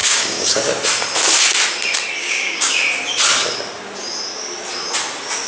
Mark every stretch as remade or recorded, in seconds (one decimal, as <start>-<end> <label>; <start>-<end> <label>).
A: 0.0-0.6 remade; 0.6-2.2 recorded; 2.2-2.8 remade; 2.8-5.5 recorded